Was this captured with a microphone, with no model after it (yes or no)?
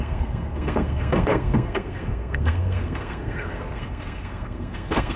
no